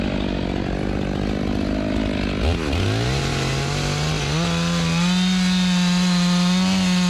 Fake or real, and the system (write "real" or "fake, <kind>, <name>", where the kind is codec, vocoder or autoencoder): real